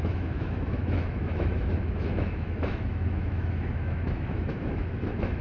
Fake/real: fake